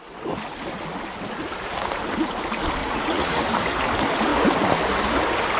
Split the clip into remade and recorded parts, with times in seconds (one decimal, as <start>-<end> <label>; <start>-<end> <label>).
0.0-2.8 recorded; 2.8-3.4 remade; 3.4-5.6 recorded